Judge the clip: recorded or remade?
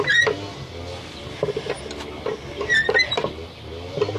recorded